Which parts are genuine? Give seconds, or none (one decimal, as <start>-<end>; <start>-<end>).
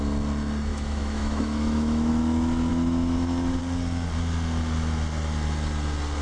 0.0-0.7; 2.1-2.7; 3.6-6.2